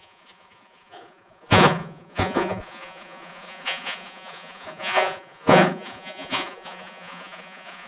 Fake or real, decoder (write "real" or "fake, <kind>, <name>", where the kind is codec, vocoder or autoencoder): fake, vocoder, Vocos